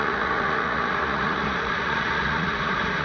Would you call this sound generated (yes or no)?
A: yes